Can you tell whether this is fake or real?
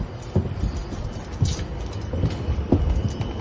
real